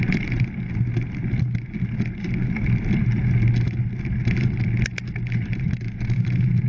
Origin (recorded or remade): recorded